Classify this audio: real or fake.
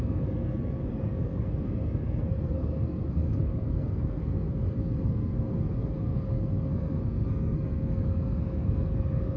fake